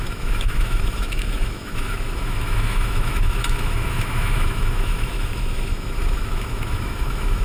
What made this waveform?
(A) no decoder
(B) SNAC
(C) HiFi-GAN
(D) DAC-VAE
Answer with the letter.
D